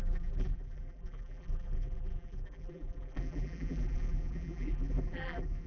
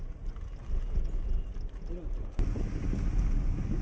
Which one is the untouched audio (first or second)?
second